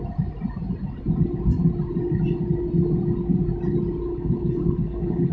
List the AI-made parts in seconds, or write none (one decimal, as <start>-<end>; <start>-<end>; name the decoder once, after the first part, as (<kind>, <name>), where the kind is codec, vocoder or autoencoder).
4.1-5.3 (codec, HILCodec)